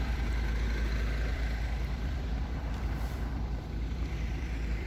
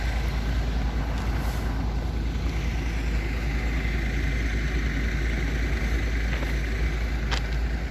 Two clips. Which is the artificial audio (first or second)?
first